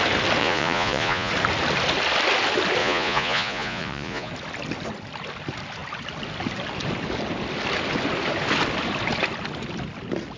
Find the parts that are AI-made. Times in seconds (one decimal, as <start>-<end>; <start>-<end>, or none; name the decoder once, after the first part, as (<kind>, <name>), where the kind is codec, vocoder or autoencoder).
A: 0.4-1.3 (vocoder, Vocos); 2.8-4.3